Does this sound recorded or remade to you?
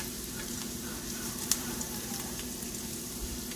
remade